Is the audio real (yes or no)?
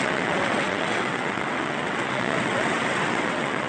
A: no